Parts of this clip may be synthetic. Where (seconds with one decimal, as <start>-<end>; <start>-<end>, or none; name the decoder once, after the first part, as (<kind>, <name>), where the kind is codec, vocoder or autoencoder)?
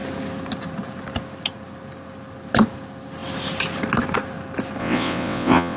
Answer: 4.8-5.8 (vocoder, WaveNeXt)